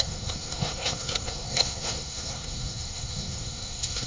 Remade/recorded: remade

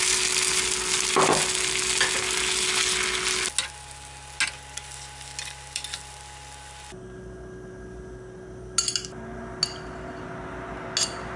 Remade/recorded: recorded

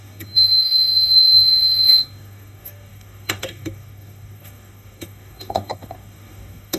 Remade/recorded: remade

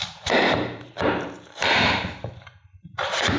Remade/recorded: remade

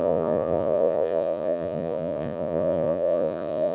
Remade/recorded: remade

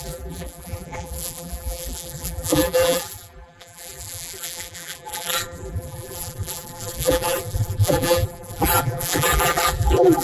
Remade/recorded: remade